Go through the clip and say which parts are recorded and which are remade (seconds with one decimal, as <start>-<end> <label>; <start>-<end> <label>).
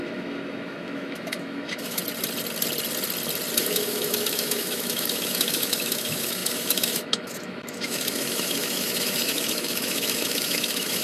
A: 0.0-2.0 remade; 2.0-3.6 recorded; 3.6-11.0 remade